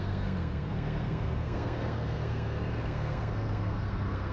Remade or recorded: remade